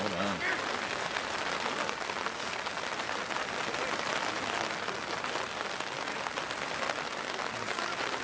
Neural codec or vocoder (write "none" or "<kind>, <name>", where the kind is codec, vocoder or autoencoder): none